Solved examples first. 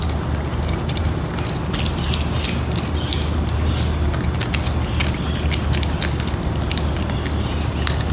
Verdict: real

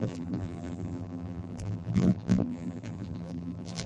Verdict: fake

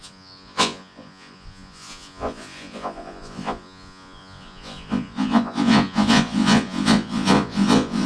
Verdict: fake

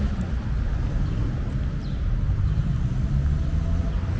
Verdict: real